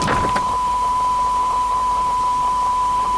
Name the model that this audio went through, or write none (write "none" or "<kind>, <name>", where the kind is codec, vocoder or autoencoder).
vocoder, BigVGAN v2